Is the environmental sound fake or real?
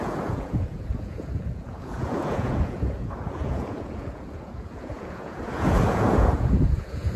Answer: fake